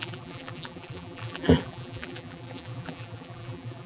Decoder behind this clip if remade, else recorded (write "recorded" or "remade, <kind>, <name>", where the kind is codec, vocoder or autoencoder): remade, vocoder, BigVGAN v2